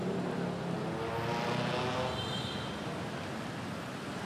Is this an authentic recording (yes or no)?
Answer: yes